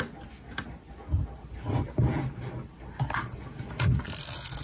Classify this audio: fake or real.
real